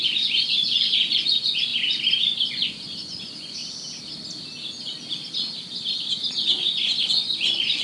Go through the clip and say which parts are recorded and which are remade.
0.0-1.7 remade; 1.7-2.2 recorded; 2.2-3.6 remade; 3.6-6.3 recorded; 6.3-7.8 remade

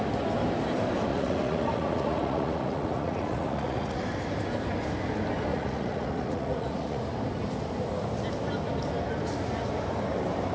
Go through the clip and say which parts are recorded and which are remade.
0.0-1.1 recorded; 1.1-4.0 remade; 4.0-5.5 recorded; 5.5-7.0 remade; 7.0-10.5 recorded

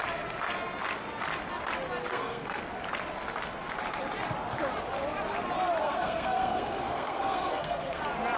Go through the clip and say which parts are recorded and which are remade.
0.0-2.1 recorded; 2.1-2.6 remade; 2.6-5.8 recorded; 5.8-8.0 remade; 8.0-8.4 recorded

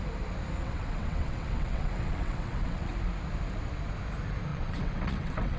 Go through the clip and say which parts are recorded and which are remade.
0.0-0.6 recorded; 0.6-2.9 remade; 2.9-4.5 recorded; 4.5-5.6 remade

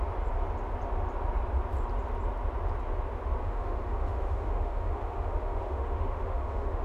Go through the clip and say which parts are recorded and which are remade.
0.0-3.4 recorded; 3.4-6.8 remade

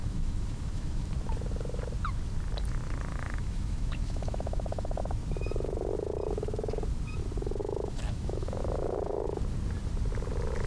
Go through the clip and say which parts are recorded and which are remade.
0.0-1.1 remade; 1.1-3.1 recorded; 3.1-5.0 remade; 5.0-7.6 recorded; 7.6-8.6 remade; 8.6-10.7 recorded

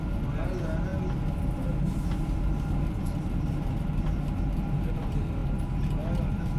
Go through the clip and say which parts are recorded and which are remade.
0.0-6.6 recorded